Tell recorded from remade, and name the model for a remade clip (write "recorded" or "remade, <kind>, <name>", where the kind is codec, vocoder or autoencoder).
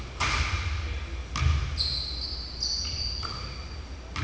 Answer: recorded